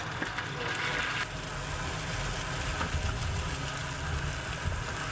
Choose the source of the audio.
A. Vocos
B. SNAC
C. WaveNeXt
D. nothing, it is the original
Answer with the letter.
D